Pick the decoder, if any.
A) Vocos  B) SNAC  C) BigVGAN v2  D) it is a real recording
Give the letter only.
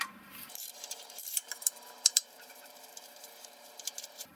C